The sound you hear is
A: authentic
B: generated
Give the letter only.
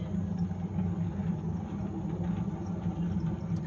A